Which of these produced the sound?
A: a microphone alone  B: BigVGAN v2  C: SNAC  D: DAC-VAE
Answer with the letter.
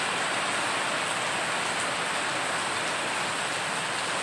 A